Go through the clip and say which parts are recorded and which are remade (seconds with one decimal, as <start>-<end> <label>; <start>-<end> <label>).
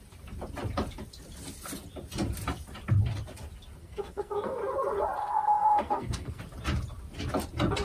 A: 0.0-3.8 recorded; 3.8-4.6 remade; 4.6-5.2 recorded; 5.2-6.4 remade; 6.4-7.8 recorded